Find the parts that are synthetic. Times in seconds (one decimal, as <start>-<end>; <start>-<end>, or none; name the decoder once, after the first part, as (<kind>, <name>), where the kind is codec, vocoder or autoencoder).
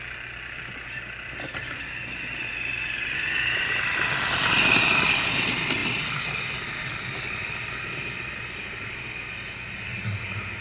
none